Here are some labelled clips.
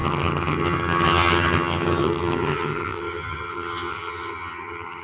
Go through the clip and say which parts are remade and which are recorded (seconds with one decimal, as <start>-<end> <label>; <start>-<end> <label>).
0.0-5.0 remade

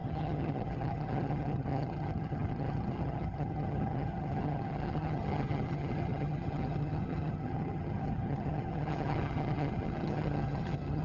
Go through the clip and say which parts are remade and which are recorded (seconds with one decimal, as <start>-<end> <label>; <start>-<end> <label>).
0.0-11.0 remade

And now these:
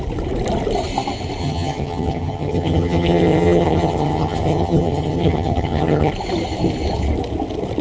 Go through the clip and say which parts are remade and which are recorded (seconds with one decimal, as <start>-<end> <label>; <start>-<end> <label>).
0.0-1.4 recorded; 1.4-6.1 remade; 6.1-7.8 recorded

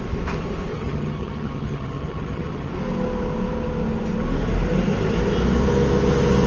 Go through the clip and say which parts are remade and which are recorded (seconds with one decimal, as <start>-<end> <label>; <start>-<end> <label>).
0.0-0.7 recorded; 0.7-2.7 remade; 2.7-6.5 recorded

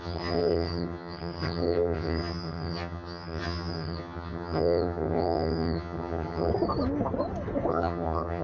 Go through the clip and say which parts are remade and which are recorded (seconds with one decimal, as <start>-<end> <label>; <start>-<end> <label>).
0.0-6.5 remade; 6.5-7.7 recorded; 7.7-8.4 remade

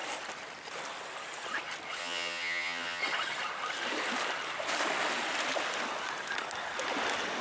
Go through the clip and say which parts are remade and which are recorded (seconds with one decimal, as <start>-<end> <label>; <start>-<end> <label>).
0.0-2.0 recorded; 2.0-3.0 remade; 3.0-7.4 recorded

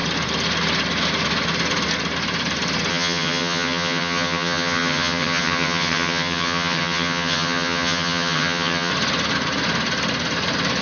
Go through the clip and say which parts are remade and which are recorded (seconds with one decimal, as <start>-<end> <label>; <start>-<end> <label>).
0.0-2.9 recorded; 2.9-8.9 remade; 8.9-10.8 recorded

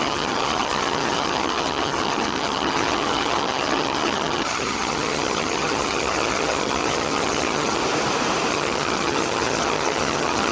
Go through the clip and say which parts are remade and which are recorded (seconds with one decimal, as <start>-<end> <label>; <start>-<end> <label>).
0.0-7.8 remade; 7.8-8.5 recorded; 8.5-10.5 remade